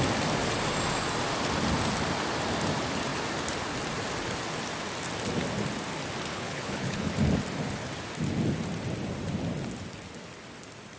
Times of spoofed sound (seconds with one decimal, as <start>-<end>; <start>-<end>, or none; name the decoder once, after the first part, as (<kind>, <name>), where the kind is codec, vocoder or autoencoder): 6.3-7.1 (codec, HILCodec)